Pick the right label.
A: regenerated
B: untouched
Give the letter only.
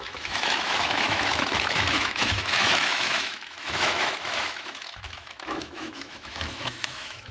A